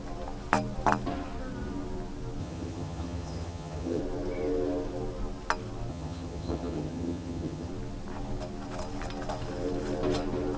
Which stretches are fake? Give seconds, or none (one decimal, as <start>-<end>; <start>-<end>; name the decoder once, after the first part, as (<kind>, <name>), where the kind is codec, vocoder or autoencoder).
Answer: 2.4-4.0 (vocoder, HiFi-GAN); 5.9-7.7